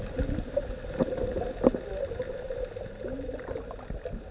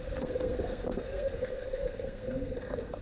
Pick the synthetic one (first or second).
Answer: second